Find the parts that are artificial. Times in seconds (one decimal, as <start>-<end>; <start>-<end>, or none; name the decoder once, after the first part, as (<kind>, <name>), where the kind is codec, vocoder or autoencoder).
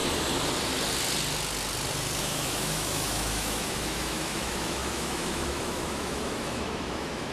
2.2-7.3 (autoencoder, DAC-VAE)